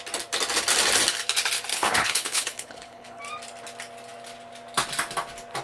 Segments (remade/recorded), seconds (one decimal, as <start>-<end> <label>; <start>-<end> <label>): 0.0-1.7 recorded; 1.7-3.2 remade; 3.2-5.6 recorded